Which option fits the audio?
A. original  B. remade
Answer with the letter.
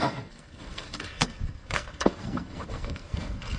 B